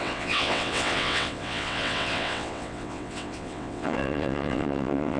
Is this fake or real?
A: fake